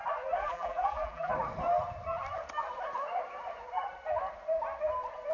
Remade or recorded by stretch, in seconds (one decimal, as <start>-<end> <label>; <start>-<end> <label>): 0.0-0.4 recorded; 0.4-1.3 remade; 1.3-5.3 recorded